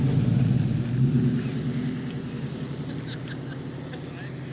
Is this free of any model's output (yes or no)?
yes